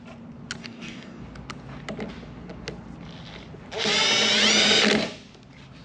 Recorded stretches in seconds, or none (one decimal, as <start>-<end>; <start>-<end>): 0.0-0.6; 1.2-5.8